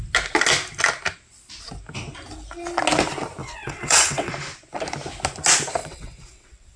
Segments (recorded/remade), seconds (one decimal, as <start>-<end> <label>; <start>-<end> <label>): 0.0-3.4 recorded; 3.4-4.3 remade; 4.3-5.8 recorded; 5.8-6.8 remade